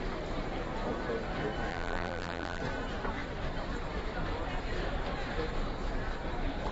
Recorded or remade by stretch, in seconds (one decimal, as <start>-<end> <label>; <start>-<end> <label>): 0.0-1.7 recorded; 1.7-2.6 remade; 2.6-6.7 recorded